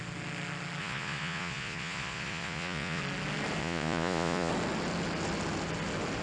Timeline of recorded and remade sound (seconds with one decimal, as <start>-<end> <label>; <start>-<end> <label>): 0.0-0.8 recorded; 0.8-3.0 remade; 3.0-3.6 recorded; 3.6-4.5 remade; 4.5-6.2 recorded